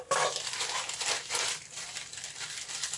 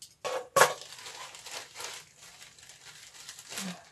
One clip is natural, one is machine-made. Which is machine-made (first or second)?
first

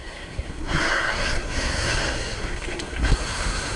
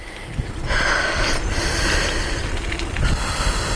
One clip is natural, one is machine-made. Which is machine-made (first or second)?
first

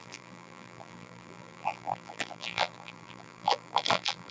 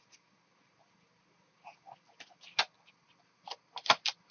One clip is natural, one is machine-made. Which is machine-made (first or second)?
first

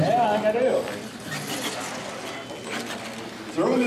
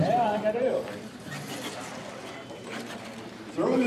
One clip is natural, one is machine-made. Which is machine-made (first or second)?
second